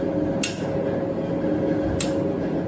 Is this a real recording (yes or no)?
yes